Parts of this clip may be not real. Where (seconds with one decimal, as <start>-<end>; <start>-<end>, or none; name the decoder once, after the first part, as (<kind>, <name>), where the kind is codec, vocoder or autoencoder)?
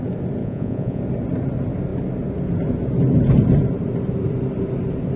0.4-1.0 (vocoder, Vocos)